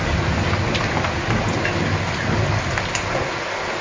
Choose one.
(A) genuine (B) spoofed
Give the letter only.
A